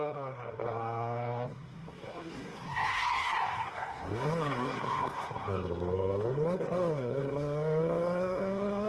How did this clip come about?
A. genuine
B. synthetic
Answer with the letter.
B